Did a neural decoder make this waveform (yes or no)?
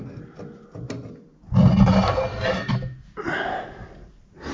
no